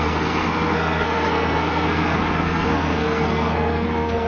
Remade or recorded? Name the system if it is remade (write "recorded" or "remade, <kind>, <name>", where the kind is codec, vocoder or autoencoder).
remade, codec, SNAC